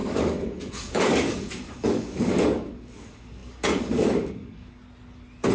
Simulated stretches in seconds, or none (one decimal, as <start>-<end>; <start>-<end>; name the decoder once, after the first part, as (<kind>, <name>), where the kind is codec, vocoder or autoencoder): 0.0-4.8 (codec, DAC)